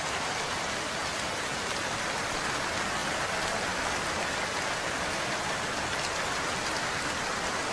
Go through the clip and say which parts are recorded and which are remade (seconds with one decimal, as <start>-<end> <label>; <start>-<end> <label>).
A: 0.0-7.7 recorded